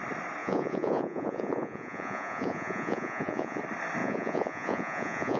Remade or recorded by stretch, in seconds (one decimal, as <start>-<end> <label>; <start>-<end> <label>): 0.0-0.4 recorded; 0.4-3.6 remade; 3.6-4.0 recorded; 4.0-5.4 remade